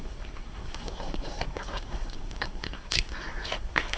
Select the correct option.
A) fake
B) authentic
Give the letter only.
A